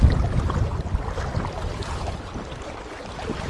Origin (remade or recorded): recorded